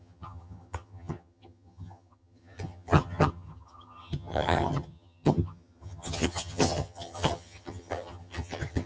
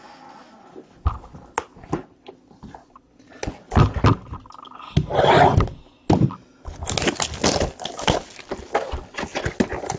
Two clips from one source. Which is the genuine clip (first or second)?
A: second